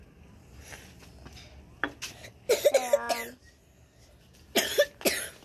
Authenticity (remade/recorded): recorded